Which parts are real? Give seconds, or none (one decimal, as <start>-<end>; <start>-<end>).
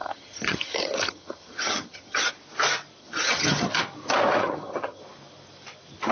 2.3-3.0; 3.8-4.4; 5.0-6.1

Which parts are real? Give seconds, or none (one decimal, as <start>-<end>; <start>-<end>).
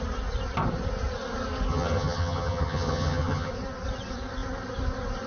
0.0-1.7; 3.5-5.3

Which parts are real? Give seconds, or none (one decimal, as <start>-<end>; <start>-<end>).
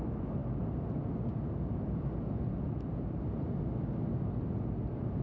0.0-5.2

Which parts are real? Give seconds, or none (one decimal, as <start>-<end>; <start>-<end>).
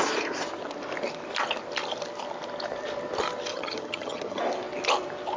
0.0-3.5; 4.4-5.4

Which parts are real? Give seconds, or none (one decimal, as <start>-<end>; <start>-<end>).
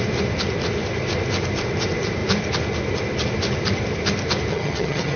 0.0-4.5